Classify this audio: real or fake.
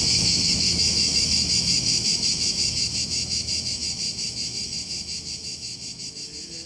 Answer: fake